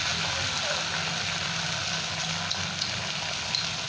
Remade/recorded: recorded